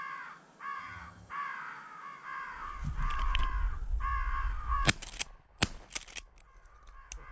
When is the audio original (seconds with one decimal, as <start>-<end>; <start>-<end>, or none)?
0.0-0.8; 1.3-7.3